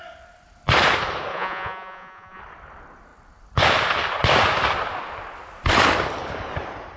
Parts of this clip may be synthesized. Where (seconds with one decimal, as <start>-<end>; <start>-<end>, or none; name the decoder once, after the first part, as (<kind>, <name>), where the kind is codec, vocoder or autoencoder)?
1.3-2.4 (vocoder, Vocos)